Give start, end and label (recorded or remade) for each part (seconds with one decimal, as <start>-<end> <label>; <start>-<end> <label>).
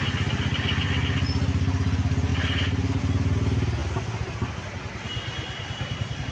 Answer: 0.0-6.3 recorded